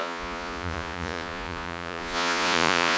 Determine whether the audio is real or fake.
fake